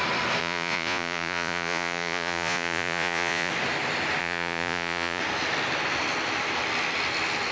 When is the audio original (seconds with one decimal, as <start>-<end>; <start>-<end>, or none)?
0.0-0.4; 3.5-4.2; 5.2-7.5